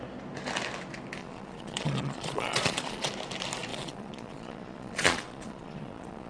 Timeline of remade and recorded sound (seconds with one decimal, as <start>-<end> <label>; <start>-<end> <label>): 0.0-1.2 recorded; 1.2-3.1 remade; 3.1-3.7 recorded; 3.7-6.3 remade